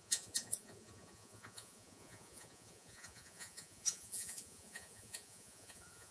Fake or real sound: fake